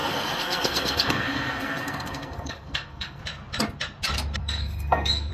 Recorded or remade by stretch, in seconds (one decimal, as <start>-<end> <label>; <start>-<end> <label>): 0.0-3.2 remade; 3.2-4.4 recorded; 4.4-5.3 remade